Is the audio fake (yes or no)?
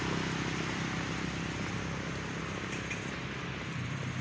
no